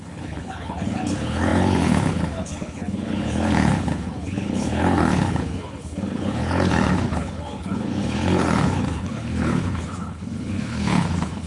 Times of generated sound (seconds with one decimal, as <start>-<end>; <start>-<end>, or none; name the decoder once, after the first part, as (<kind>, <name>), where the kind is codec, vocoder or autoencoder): 0.0-11.5 (codec, HILCodec)